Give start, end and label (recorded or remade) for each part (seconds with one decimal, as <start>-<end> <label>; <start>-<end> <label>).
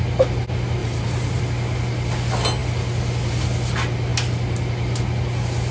0.0-0.8 recorded; 0.8-1.4 remade; 1.4-5.7 recorded